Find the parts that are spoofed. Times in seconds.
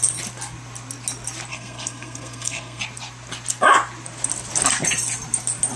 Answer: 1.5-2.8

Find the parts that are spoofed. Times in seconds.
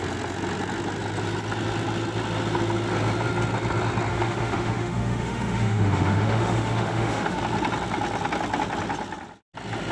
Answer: 4.1-7.4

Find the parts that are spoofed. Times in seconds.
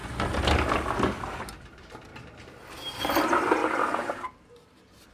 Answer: 1.1-2.1; 3.0-3.6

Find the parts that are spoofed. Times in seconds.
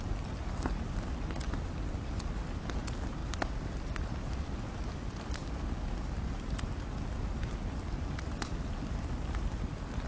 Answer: none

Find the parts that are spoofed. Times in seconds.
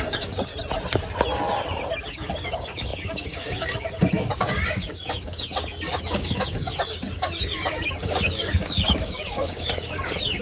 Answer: 0.0-0.5; 2.0-10.4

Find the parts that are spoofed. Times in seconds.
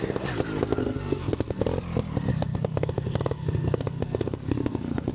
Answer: 0.8-1.6; 2.3-5.1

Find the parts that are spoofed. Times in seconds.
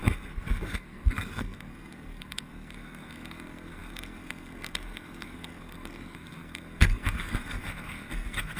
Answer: 0.0-8.6